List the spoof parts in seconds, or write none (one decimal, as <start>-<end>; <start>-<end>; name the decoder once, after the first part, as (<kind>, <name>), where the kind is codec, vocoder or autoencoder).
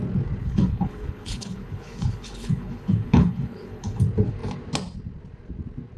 0.4-4.0 (codec, HILCodec)